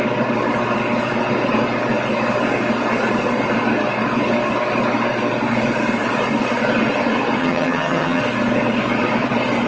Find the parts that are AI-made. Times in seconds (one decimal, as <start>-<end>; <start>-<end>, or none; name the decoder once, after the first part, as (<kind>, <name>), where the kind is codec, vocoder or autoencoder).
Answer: 7.4-8.2 (vocoder, HiFi-GAN)